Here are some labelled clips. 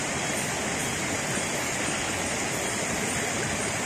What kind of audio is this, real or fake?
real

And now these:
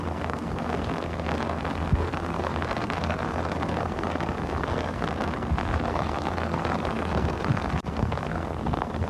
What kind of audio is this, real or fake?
fake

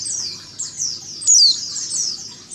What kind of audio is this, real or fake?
real